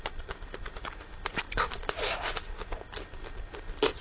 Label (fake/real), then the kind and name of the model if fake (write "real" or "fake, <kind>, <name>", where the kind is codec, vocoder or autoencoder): real